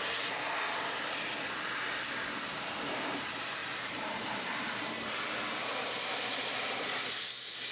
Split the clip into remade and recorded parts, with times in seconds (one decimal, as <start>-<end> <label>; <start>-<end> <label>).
0.0-3.6 recorded; 3.6-4.8 remade; 4.8-7.7 recorded